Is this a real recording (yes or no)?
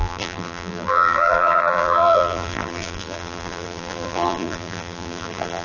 no